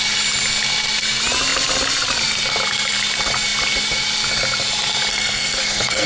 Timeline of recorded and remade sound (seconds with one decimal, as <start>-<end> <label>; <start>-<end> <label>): 0.0-5.1 recorded; 5.1-6.1 remade